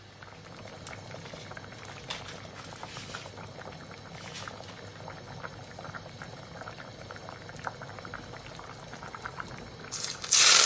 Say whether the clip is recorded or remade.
recorded